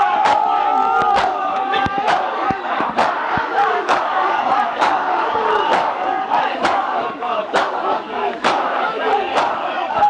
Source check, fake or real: fake